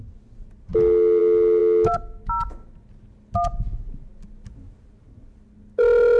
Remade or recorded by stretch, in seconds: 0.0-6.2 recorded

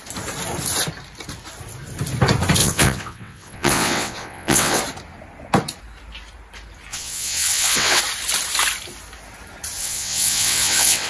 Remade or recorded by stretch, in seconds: 0.0-2.6 recorded; 2.6-4.8 remade; 4.8-6.9 recorded; 6.9-8.0 remade; 8.0-9.8 recorded; 9.8-11.1 remade

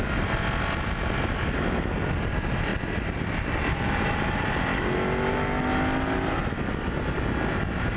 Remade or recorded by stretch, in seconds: 0.0-8.0 recorded

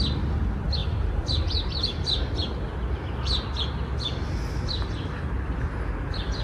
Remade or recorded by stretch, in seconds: 0.0-0.8 recorded; 0.8-1.7 remade; 1.7-6.4 recorded

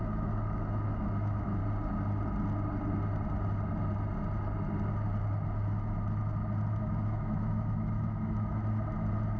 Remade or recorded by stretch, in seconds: 0.0-1.6 remade; 1.6-6.8 recorded; 6.8-8.6 remade; 8.6-9.4 recorded